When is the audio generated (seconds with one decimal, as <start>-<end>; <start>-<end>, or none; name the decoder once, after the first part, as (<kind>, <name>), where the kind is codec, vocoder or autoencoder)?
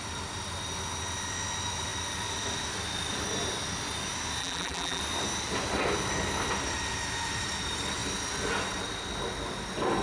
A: 4.4-5.0 (vocoder, BigVGAN v2)